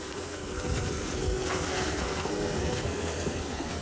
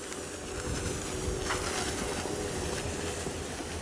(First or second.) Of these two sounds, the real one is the second